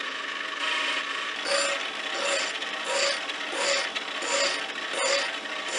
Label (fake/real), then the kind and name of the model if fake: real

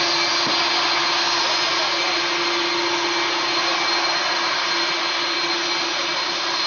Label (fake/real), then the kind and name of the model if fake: real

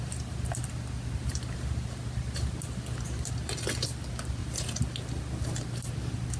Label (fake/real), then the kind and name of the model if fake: real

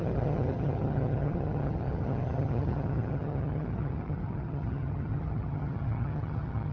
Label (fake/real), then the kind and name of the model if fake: fake, vocoder, HiFi-GAN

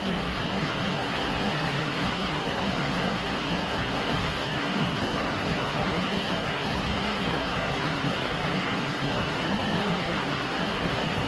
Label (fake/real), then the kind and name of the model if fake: fake, codec, SNAC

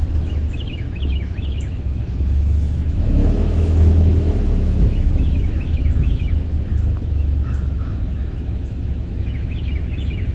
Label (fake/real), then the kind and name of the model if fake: fake, autoencoder, DAC-VAE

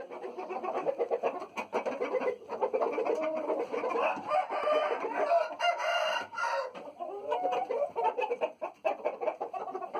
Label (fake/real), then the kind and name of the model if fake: real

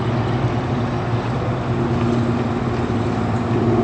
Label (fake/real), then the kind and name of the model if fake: real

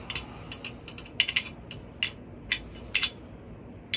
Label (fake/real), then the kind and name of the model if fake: real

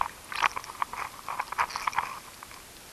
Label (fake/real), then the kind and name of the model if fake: real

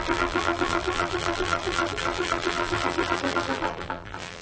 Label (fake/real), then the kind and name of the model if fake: fake, vocoder, BigVGAN v2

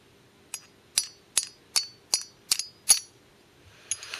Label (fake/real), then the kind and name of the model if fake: real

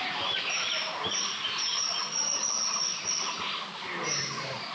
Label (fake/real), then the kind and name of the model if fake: real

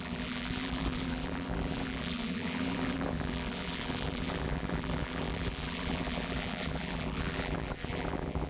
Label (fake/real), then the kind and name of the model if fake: fake, vocoder, BigVGAN v2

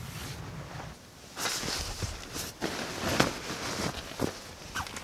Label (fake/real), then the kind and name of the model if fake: real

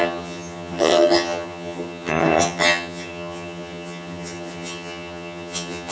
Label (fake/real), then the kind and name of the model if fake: fake, vocoder, HiFi-GAN